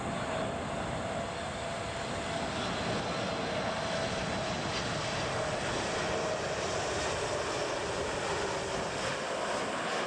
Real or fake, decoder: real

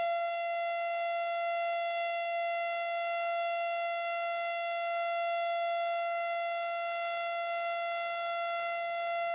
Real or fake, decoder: fake, autoencoder, DAC-VAE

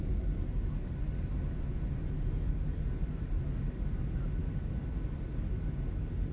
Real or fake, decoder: real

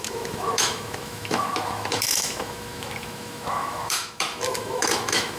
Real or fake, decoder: fake, autoencoder, DAC-VAE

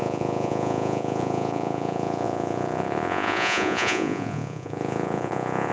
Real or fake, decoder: fake, vocoder, Vocos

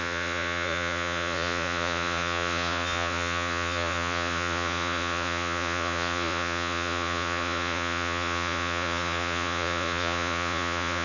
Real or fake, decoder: fake, vocoder, Vocos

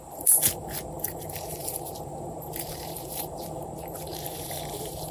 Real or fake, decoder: fake, vocoder, BigVGAN v2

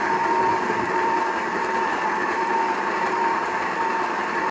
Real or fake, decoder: fake, vocoder, BigVGAN v2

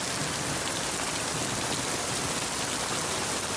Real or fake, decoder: real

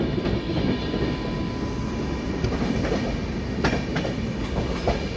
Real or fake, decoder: real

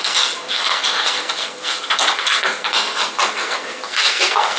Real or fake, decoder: fake, codec, SNAC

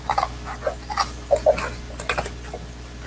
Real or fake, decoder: real